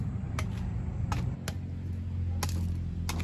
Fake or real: real